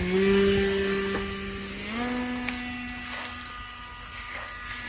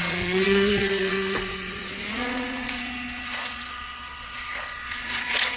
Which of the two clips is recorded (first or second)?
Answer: first